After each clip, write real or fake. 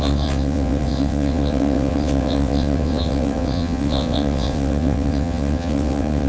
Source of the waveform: fake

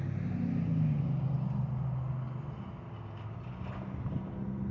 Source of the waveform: real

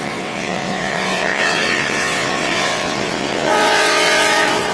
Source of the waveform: fake